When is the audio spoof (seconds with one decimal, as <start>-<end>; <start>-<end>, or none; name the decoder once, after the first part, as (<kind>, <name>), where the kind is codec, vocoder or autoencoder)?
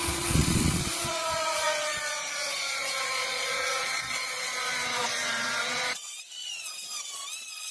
0.0-7.7 (vocoder, Vocos)